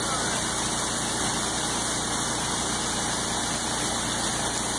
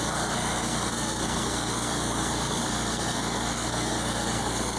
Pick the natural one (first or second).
first